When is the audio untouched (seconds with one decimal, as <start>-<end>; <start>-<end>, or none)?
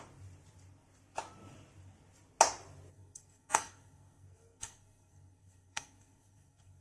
0.0-2.9